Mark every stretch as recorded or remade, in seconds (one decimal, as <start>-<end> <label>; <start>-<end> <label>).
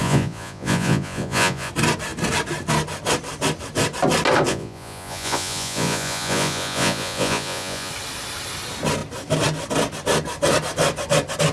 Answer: 0.0-1.7 remade; 1.7-4.5 recorded; 4.5-7.9 remade; 7.9-11.5 recorded